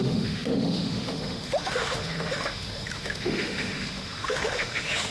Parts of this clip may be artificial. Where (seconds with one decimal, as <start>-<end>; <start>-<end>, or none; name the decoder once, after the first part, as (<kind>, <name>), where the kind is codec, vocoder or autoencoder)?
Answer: 0.0-5.1 (autoencoder, DAC-VAE)